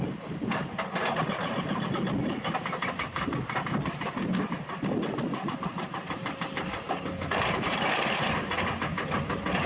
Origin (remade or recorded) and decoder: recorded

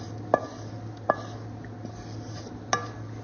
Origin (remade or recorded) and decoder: recorded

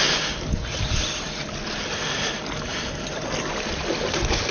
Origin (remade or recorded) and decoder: recorded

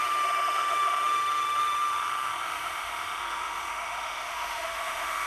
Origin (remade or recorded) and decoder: remade, autoencoder, DAC-VAE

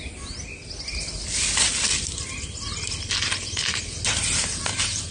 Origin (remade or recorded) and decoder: recorded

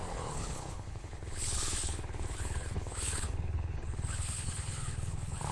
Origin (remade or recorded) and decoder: remade, codec, HILCodec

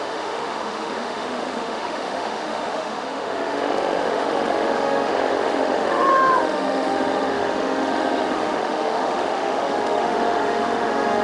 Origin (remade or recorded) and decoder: remade, autoencoder, DAC-VAE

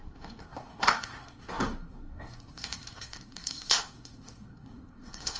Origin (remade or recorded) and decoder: remade, codec, SNAC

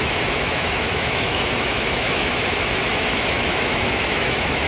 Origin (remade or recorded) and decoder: remade, autoencoder, DAC-VAE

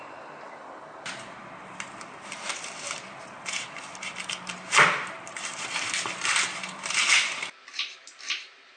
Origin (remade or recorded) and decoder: remade, vocoder, BigVGAN v2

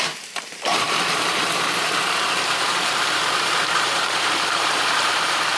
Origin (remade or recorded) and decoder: remade, vocoder, BigVGAN v2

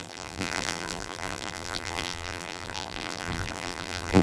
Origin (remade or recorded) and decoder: remade, vocoder, BigVGAN v2